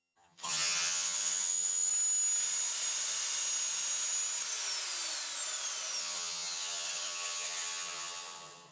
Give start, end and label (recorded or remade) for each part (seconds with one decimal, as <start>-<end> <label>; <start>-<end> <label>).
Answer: 0.0-1.9 remade; 1.9-6.0 recorded; 6.0-8.7 remade